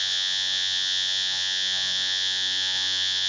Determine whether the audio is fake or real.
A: fake